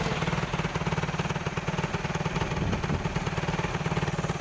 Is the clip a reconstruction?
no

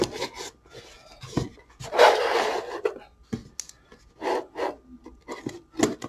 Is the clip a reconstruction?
no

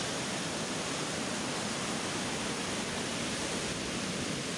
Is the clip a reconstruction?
no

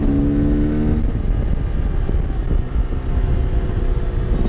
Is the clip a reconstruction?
no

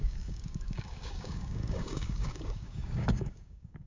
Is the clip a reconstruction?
yes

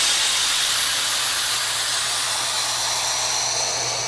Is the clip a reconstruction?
no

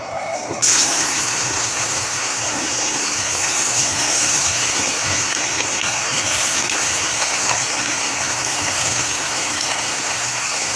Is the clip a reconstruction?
yes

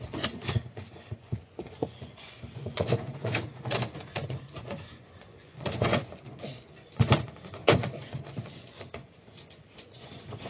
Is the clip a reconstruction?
yes